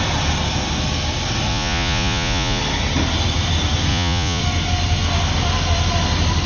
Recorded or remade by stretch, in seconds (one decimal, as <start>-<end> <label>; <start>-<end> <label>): 0.0-1.5 recorded; 1.5-2.6 remade; 2.6-3.9 recorded; 3.9-4.4 remade; 4.4-6.5 recorded